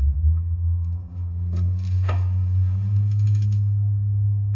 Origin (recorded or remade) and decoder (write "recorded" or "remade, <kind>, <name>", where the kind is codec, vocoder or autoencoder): remade, codec, SNAC